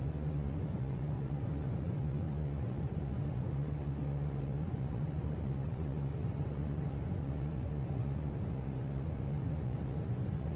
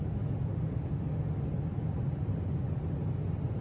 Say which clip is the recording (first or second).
second